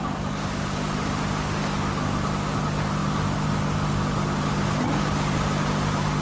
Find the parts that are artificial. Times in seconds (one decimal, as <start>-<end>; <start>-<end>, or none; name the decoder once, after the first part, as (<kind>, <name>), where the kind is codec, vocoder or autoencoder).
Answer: none